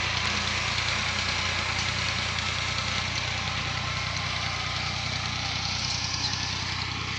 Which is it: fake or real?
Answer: real